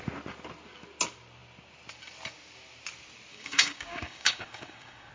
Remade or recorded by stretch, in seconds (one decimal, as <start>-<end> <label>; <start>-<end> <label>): 0.0-3.3 recorded; 3.3-5.1 remade